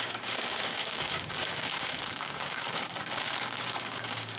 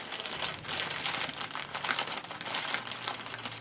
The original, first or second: second